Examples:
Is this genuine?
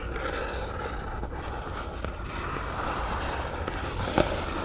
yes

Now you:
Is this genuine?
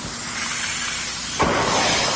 yes